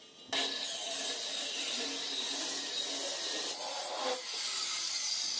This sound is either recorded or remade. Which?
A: recorded